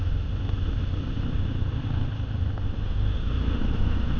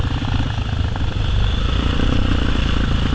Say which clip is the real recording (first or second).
second